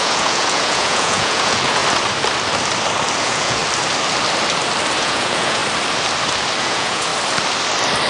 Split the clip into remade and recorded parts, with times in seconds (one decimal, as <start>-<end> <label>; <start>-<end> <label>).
0.0-1.8 remade; 1.8-3.2 recorded; 3.2-3.6 remade; 3.6-5.0 recorded; 5.0-5.6 remade; 5.6-6.6 recorded; 6.6-7.1 remade; 7.1-8.1 recorded